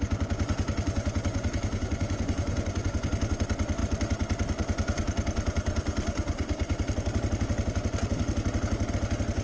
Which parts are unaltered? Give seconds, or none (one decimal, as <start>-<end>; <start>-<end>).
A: 0.0-1.3; 3.1-9.4